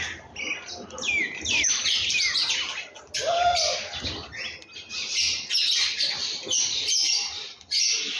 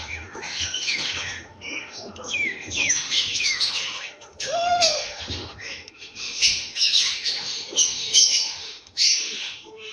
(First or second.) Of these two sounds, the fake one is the second